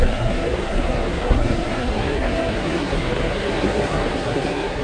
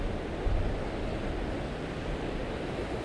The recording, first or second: second